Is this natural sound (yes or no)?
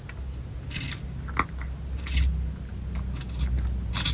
yes